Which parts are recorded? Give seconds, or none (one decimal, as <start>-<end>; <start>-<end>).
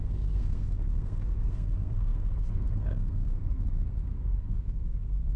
none